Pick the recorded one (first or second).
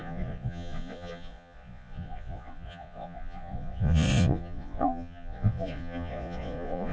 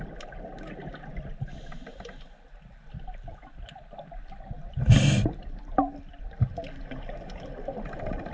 second